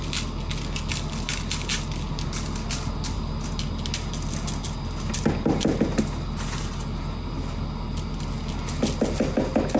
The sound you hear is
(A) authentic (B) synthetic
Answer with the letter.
A